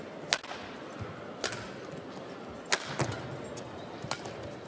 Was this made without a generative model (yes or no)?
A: yes